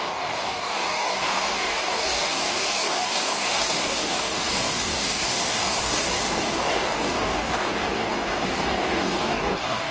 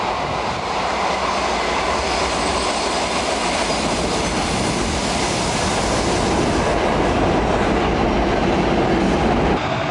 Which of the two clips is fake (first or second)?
first